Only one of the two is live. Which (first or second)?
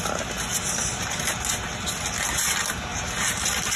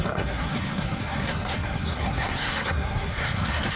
first